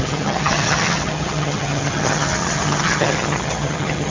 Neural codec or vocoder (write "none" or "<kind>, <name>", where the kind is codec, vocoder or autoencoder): vocoder, HiFi-GAN